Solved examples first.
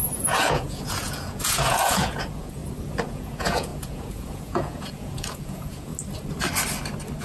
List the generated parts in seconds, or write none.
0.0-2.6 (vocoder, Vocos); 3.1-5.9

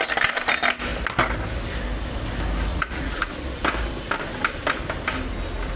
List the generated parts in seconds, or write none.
2.7-3.3 (vocoder, Vocos)

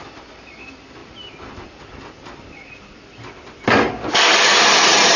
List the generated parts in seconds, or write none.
none

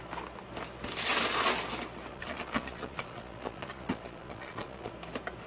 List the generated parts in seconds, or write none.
2.1-4.9 (vocoder, Vocos)

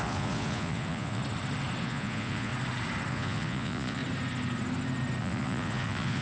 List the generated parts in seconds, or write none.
0.0-1.2 (vocoder, Vocos); 1.8-2.5; 3.1-4.0; 5.2-6.2

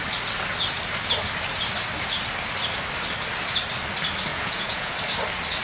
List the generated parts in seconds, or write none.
4.3-4.9 (vocoder, Vocos)